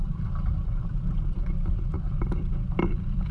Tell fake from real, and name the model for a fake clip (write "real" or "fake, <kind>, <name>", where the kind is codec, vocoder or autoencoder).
fake, vocoder, BigVGAN v2